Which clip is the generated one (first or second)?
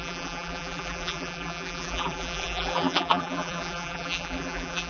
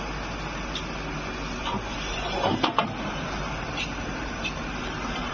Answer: first